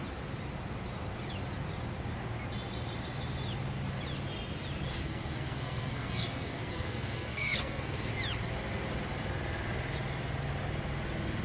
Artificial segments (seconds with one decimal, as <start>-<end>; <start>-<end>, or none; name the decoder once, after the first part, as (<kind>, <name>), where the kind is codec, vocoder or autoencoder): 4.9-8.1 (codec, SNAC)